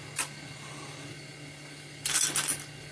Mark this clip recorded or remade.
recorded